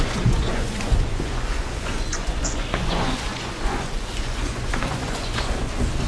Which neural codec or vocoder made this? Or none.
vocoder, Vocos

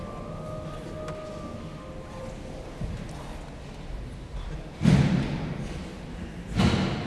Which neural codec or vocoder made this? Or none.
none